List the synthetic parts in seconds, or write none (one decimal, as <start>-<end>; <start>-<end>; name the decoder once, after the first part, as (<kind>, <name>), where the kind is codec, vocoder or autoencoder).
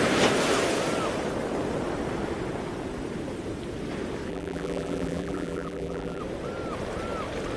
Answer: 4.3-6.2 (vocoder, BigVGAN v2)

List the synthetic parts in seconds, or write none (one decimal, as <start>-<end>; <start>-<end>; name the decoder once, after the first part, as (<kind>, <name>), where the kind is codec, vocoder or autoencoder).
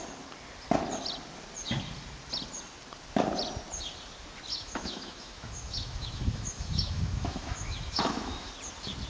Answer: 4.5-8.5 (autoencoder, DAC-VAE)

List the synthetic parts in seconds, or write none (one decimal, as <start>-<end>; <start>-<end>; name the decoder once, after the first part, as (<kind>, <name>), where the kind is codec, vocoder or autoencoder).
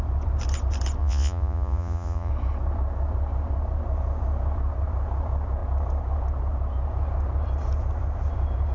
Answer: 1.0-2.3 (vocoder, Vocos)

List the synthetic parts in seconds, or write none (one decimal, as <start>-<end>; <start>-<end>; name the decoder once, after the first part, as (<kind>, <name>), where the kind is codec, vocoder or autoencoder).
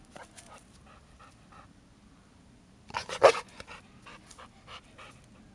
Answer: 3.0-3.6 (vocoder, Vocos)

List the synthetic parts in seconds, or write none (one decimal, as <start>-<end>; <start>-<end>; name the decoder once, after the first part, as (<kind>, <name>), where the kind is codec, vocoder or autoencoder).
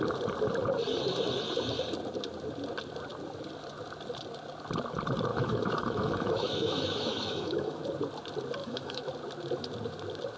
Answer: 5.3-7.8 (autoencoder, DAC-VAE); 8.6-9.1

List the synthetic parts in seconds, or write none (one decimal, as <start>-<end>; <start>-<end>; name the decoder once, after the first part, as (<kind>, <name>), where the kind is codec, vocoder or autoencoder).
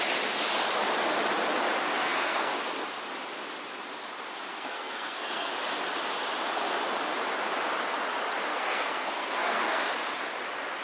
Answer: 2.0-2.5 (codec, SNAC); 4.5-5.5; 8.5-9.8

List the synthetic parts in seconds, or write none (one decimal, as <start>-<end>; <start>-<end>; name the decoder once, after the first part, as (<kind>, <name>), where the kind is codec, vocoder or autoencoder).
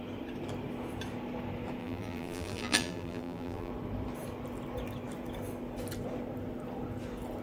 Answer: 1.8-3.7 (vocoder, BigVGAN v2)